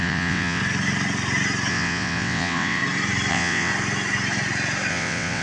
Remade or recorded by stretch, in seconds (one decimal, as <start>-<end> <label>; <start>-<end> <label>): 0.0-0.6 remade; 0.6-1.7 recorded; 1.7-2.8 remade; 2.8-3.3 recorded; 3.3-3.7 remade; 3.7-4.9 recorded; 4.9-5.4 remade